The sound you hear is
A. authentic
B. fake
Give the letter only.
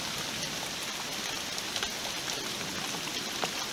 A